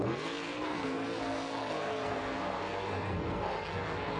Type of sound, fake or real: fake